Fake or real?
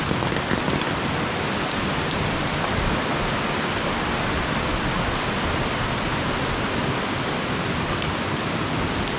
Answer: real